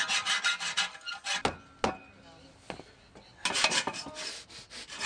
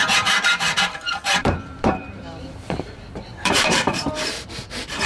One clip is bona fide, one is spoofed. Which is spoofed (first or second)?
second